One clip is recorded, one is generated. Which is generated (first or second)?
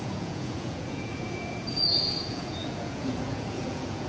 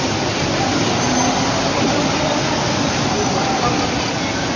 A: first